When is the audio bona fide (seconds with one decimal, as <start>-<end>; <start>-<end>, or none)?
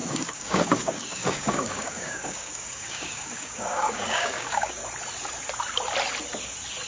4.8-6.9